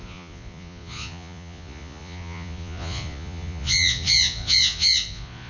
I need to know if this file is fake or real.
fake